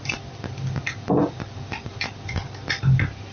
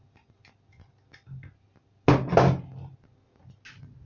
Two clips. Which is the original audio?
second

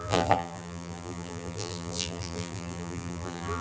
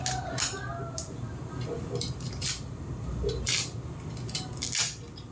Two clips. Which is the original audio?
second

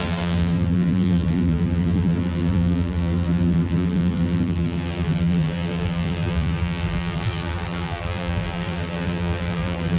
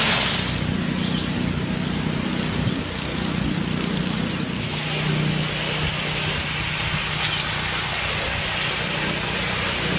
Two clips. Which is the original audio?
second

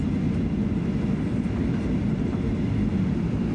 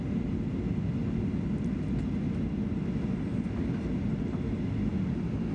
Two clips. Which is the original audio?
second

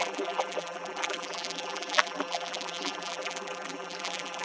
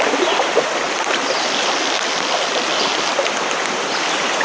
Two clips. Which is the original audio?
second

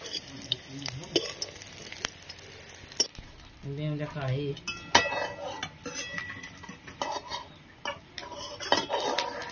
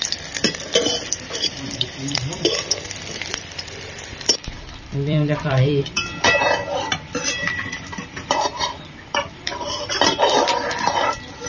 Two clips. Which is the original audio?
first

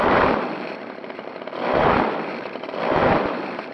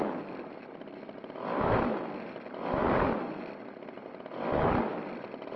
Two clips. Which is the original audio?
second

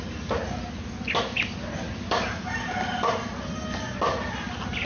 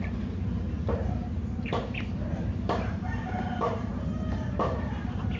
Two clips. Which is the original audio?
first